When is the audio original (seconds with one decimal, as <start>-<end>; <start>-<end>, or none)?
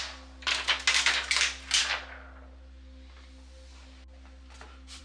0.0-5.0